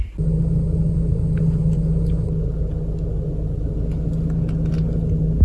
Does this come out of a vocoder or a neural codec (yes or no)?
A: no